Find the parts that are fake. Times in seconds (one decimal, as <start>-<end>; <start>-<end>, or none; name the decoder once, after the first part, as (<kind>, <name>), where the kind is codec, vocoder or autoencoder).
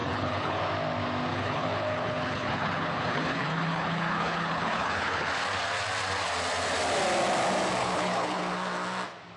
0.0-0.6 (codec, HILCodec); 1.3-5.3; 7.8-8.4